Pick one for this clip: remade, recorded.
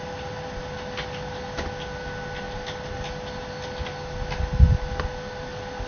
recorded